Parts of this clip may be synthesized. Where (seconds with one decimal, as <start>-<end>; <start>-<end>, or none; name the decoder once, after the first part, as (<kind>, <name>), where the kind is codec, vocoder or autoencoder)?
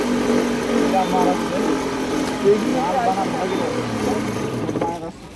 none